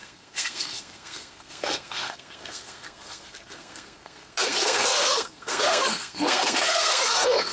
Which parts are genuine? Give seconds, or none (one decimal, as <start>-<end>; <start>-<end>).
none